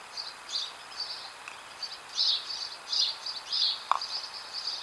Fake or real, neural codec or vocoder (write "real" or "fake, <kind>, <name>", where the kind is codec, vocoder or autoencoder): real